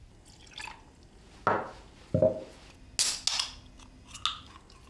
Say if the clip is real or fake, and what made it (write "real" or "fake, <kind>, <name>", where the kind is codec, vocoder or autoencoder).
real